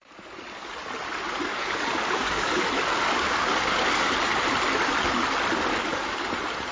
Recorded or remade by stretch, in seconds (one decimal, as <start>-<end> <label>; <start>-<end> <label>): 0.0-1.5 recorded; 1.5-4.1 remade; 4.1-5.7 recorded; 5.7-6.3 remade; 6.3-6.7 recorded